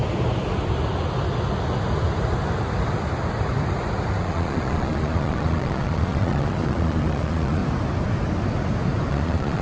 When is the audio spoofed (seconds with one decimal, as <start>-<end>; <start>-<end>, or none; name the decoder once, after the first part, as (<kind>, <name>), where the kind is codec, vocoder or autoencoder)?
4.2-7.6 (vocoder, Vocos); 9.1-9.6